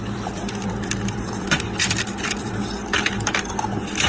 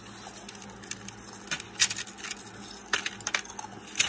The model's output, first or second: first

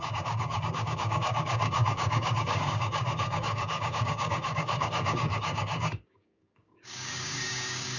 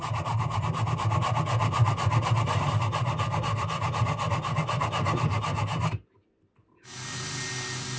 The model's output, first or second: first